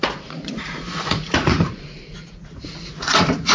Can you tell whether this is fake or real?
fake